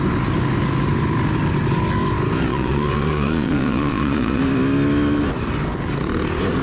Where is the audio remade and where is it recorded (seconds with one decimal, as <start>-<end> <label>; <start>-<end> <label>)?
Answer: 0.0-2.5 recorded; 2.5-4.4 remade; 4.4-6.6 recorded